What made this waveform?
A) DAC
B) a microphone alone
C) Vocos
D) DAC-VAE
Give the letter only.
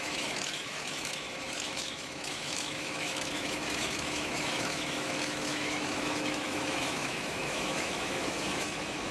D